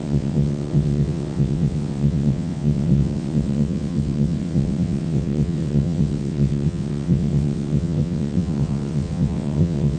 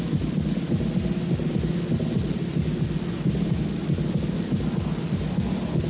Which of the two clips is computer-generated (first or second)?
first